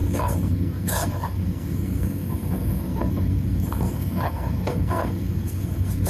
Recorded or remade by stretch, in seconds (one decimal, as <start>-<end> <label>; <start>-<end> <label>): 0.0-6.1 remade